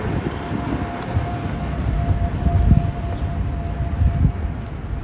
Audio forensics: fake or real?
real